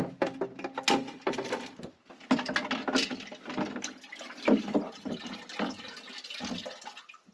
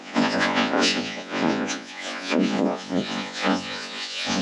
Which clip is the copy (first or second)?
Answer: second